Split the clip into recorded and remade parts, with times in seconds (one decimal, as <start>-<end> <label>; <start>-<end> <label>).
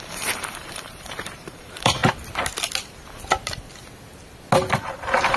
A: 0.0-2.0 remade; 2.0-4.8 recorded; 4.8-5.4 remade